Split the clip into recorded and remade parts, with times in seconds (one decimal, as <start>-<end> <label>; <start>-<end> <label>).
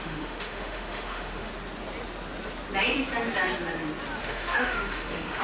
0.0-1.5 remade; 1.5-4.2 recorded; 4.2-5.4 remade